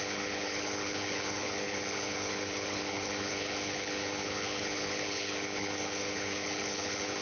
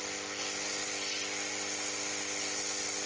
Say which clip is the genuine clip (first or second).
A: second